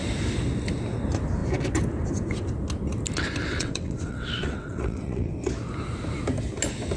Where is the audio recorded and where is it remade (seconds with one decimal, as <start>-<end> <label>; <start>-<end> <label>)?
0.0-3.5 recorded; 3.5-5.3 remade; 5.3-7.0 recorded